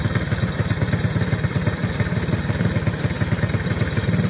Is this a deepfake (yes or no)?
no